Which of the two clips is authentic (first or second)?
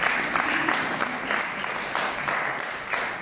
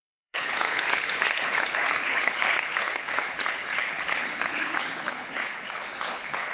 first